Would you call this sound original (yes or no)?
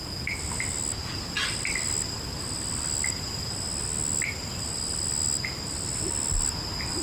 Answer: yes